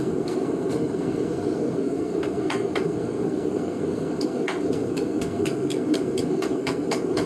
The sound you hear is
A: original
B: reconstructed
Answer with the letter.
B